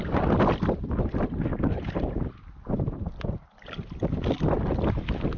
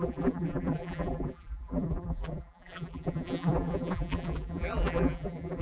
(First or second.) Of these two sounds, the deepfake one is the second